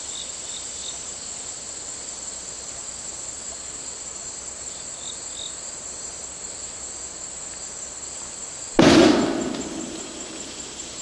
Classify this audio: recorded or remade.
recorded